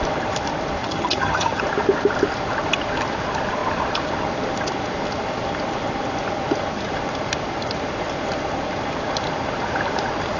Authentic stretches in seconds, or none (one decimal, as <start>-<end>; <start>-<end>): 0.0-0.8; 1.6-10.4